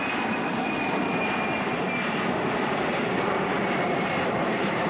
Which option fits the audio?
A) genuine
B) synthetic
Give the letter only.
B